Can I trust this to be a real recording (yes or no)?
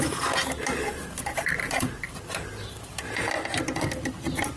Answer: yes